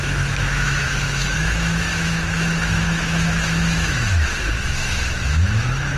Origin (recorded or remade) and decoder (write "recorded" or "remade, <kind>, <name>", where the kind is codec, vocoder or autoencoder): remade, autoencoder, DAC-VAE